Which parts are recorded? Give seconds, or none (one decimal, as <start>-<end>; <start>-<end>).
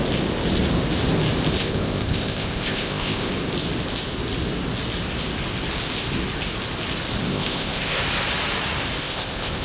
0.0-1.6; 3.3-7.3; 8.0-9.0